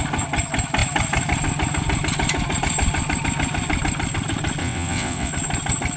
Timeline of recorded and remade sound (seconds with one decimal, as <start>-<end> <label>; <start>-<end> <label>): 0.0-4.6 recorded; 4.6-5.3 remade; 5.3-6.0 recorded

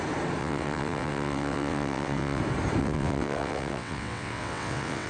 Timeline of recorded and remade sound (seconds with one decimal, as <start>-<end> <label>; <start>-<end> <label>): 0.0-0.4 recorded; 0.4-2.4 remade; 2.4-2.8 recorded; 2.8-5.1 remade

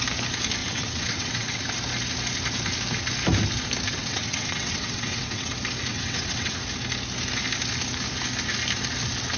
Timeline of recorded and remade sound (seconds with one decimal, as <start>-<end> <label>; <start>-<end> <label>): 0.0-0.6 recorded; 0.6-1.6 remade; 1.6-3.9 recorded; 3.9-5.5 remade; 5.5-5.9 recorded; 5.9-6.6 remade; 6.6-9.4 recorded

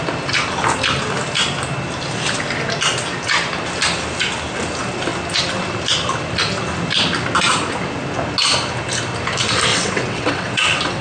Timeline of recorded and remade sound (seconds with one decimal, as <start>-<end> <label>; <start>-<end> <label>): 0.0-9.7 recorded; 9.7-11.0 remade

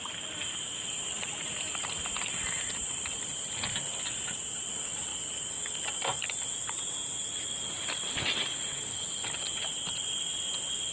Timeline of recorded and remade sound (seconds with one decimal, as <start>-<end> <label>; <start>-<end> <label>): 0.0-10.9 recorded

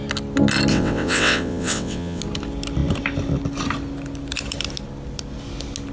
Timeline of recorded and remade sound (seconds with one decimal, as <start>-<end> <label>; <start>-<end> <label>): 0.0-0.7 recorded; 0.7-2.2 remade; 2.2-5.9 recorded